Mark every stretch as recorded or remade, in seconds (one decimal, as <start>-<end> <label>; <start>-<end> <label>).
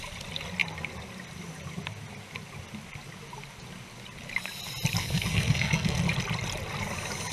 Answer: 0.0-5.0 recorded; 5.0-6.0 remade; 6.0-7.3 recorded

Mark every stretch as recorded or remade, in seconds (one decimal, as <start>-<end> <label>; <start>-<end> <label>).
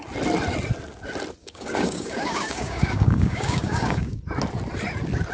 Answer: 0.0-1.4 recorded; 1.4-4.2 remade; 4.2-5.3 recorded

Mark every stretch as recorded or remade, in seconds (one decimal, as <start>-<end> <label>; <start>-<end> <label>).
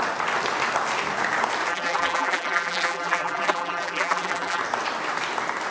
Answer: 0.0-1.7 recorded; 1.7-4.6 remade; 4.6-5.7 recorded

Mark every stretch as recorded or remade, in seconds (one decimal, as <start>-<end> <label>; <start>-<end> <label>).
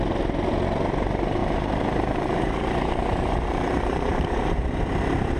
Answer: 0.0-1.4 recorded; 1.4-4.6 remade; 4.6-5.4 recorded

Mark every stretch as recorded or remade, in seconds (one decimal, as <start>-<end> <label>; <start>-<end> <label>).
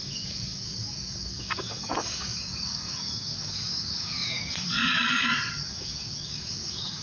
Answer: 0.0-7.0 remade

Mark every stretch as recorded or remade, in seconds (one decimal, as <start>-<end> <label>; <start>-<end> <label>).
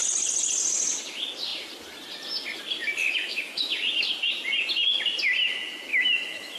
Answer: 0.0-3.0 recorded; 3.0-3.7 remade; 3.7-5.9 recorded; 5.9-6.6 remade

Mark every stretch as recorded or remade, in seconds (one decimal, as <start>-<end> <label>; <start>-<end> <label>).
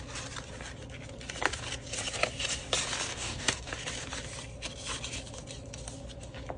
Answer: 0.0-3.1 recorded; 3.1-3.7 remade; 3.7-6.6 recorded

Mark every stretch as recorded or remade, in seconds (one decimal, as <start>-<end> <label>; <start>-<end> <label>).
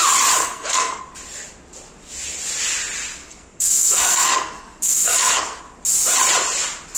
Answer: 0.0-0.4 recorded; 0.4-1.0 remade; 1.0-3.2 recorded; 3.2-5.6 remade; 5.6-7.0 recorded